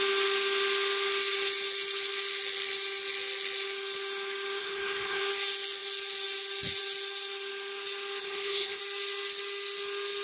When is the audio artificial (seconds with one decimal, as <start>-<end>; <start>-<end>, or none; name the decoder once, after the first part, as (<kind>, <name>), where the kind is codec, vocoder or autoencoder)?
4.6-5.2 (codec, HILCodec); 8.2-8.8